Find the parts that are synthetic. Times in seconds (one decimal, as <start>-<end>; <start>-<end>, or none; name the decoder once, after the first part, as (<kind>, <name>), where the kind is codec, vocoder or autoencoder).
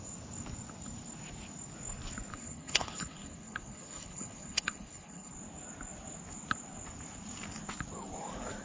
2.3-5.3 (codec, HILCodec)